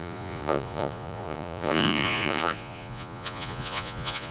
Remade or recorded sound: remade